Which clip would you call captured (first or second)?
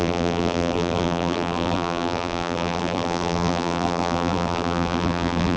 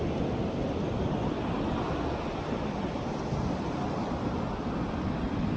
second